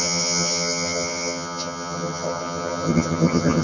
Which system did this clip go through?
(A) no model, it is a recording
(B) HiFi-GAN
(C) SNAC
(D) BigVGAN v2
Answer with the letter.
B